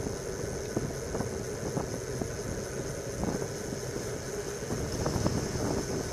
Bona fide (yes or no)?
yes